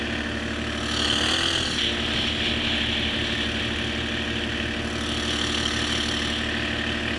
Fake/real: real